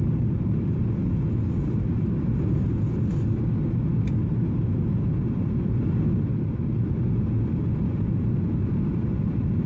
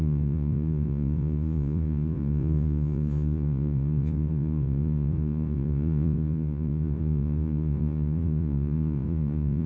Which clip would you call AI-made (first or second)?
second